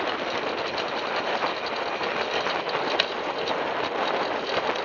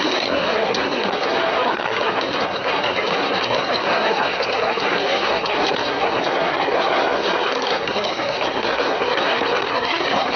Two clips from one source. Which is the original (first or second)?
first